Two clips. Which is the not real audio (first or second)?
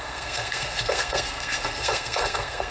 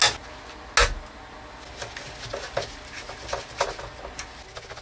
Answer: first